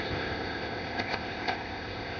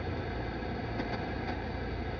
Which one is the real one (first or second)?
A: second